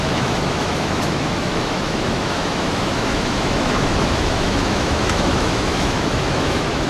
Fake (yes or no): yes